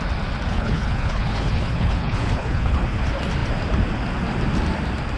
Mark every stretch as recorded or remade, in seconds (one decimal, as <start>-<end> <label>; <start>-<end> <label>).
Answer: 0.0-0.5 recorded; 0.5-3.0 remade; 3.0-5.2 recorded